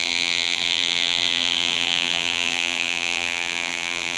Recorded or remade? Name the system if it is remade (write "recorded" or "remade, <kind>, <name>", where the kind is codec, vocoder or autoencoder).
remade, vocoder, BigVGAN v2